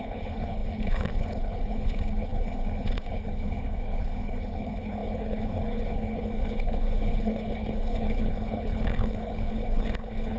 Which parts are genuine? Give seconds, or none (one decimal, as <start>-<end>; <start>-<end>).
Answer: none